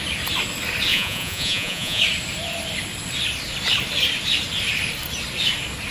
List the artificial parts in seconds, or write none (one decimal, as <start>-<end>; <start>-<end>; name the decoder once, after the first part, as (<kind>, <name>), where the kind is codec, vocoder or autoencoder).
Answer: 0.9-2.0 (vocoder, Vocos)